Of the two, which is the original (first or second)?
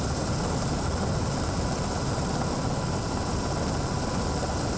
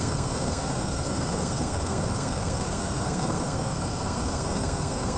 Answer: first